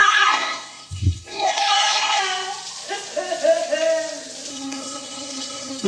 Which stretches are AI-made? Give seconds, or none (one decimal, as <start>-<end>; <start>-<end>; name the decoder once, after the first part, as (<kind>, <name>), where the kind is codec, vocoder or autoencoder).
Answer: 0.0-2.2 (codec, SNAC); 4.5-5.9